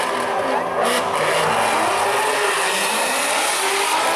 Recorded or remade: recorded